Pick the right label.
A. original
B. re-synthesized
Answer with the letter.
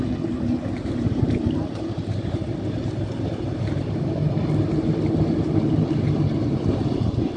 B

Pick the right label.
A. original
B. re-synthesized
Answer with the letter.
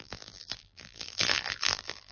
B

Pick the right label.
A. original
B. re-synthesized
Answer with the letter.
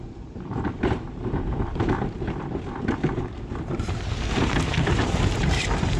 B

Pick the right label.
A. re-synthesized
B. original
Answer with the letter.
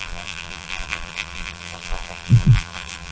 A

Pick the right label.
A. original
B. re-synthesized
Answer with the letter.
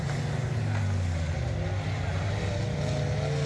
A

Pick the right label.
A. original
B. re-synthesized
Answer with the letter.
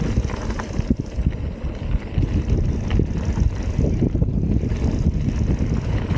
A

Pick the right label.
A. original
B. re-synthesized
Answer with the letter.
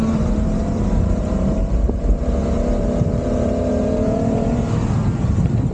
B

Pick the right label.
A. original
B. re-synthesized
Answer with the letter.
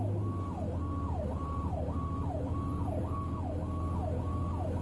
A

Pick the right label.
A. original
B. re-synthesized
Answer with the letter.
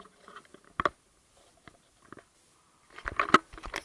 A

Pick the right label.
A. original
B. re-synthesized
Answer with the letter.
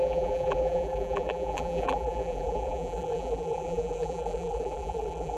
B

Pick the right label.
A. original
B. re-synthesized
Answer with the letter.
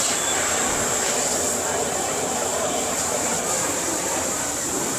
B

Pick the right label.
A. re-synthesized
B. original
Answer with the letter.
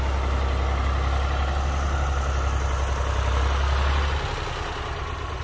B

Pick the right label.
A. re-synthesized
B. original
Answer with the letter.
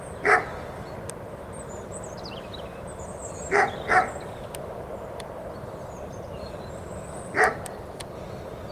B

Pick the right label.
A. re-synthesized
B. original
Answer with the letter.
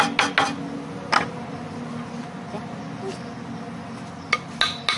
B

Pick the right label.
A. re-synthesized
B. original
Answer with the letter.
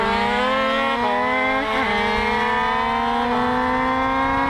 B